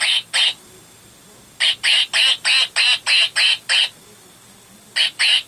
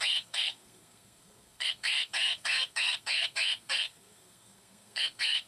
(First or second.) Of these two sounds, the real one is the first